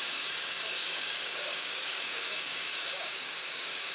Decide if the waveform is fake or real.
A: fake